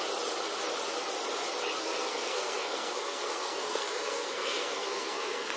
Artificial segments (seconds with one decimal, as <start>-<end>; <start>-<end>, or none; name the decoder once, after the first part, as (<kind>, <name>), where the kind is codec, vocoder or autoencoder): 1.8-5.6 (codec, SNAC)